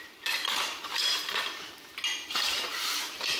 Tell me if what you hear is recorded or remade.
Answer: remade